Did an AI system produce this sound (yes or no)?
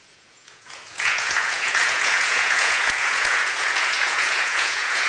yes